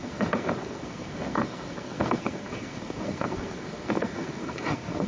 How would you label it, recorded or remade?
remade